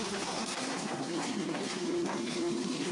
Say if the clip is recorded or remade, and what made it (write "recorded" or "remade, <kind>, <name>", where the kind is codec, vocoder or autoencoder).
remade, codec, SNAC